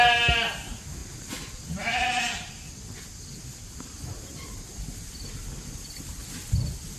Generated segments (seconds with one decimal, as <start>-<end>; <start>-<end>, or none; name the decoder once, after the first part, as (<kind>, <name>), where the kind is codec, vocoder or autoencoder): none